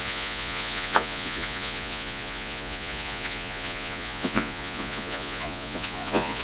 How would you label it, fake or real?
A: fake